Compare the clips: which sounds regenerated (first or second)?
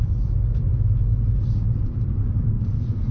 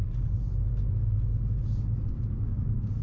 first